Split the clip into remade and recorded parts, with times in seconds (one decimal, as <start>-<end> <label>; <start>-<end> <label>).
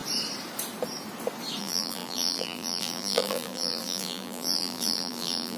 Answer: 0.0-1.6 recorded; 1.6-5.6 remade